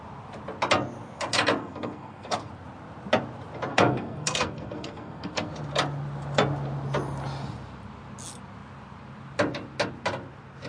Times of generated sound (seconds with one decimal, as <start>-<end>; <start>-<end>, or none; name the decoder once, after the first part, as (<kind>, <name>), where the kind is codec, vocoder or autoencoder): 1.6-2.5 (codec, SNAC); 3.7-5.5